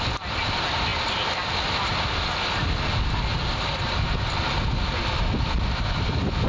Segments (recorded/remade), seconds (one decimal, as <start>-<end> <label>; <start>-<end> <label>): 0.0-6.5 recorded

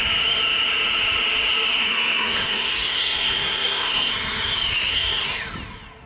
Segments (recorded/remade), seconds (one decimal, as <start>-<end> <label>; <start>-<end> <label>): 0.0-1.7 recorded; 1.7-4.1 remade; 4.1-4.9 recorded; 4.9-5.4 remade; 5.4-6.1 recorded

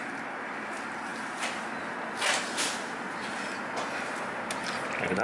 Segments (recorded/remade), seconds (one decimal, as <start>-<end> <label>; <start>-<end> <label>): 0.0-5.2 recorded

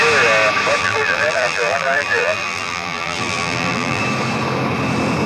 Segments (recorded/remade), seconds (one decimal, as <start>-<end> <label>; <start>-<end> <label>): 0.0-0.8 recorded; 0.8-4.0 remade; 4.0-5.3 recorded